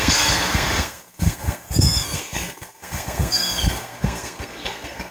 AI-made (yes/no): yes